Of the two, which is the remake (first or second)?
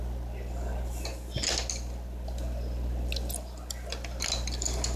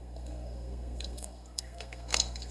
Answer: second